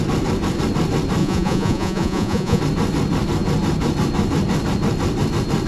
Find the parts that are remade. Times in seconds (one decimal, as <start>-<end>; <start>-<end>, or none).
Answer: 1.2-2.6